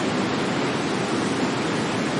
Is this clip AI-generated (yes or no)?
no